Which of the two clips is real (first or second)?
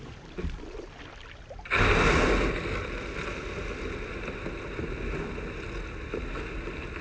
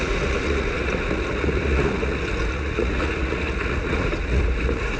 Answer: first